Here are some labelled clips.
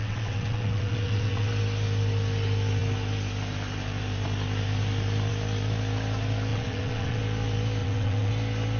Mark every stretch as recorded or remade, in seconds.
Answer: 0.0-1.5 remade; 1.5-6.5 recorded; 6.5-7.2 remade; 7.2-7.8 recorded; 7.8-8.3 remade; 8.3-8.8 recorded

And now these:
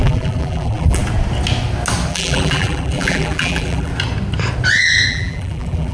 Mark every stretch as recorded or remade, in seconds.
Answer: 0.0-1.0 remade; 1.0-2.1 recorded; 2.1-3.9 remade; 3.9-5.1 recorded; 5.1-5.9 remade

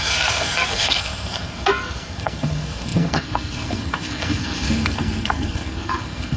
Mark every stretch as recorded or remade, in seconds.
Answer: 0.0-6.4 remade